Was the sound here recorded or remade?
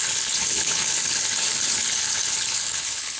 remade